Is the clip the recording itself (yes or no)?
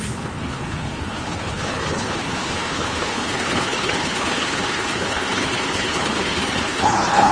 no